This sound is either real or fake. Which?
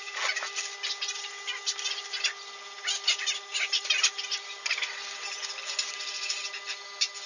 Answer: real